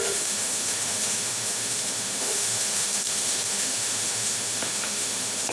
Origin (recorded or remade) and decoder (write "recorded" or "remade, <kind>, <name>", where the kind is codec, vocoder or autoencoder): remade, autoencoder, DAC-VAE